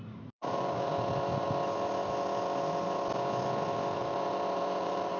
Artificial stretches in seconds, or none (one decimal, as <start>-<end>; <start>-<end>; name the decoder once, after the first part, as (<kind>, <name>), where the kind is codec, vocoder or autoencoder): 0.0-0.9 (vocoder, BigVGAN v2); 4.0-5.2